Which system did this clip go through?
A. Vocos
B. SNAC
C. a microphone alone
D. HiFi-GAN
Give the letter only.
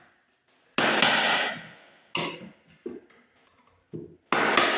C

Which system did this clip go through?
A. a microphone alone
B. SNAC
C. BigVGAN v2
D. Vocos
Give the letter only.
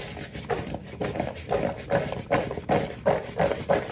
A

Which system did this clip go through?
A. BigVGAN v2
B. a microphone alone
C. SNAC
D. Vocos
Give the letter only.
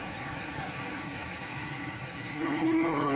C